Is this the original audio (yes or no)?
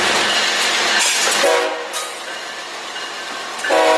yes